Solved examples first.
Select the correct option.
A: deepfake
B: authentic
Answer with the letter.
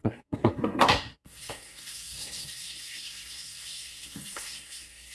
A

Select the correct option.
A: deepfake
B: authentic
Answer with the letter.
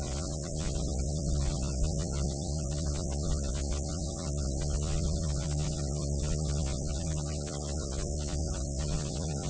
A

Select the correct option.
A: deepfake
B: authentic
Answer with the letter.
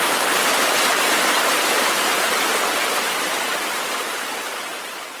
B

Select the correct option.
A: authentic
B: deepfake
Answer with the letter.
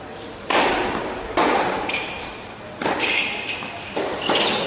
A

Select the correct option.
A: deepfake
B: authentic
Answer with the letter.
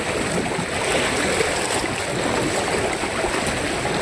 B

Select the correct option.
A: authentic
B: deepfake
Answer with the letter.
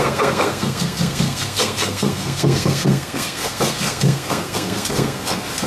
B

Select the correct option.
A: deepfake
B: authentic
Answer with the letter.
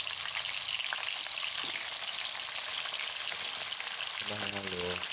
B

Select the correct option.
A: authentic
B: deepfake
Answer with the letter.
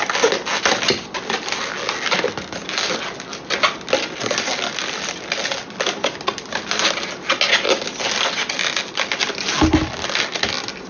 A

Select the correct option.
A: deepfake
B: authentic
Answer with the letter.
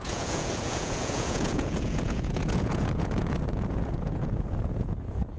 A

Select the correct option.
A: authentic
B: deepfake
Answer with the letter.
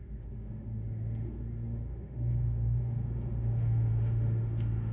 B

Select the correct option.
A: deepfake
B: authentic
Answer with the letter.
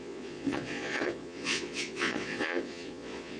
A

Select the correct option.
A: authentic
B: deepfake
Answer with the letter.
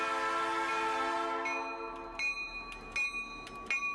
A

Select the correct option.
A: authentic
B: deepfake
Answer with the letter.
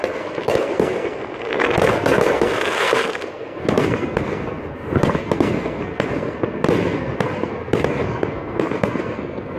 B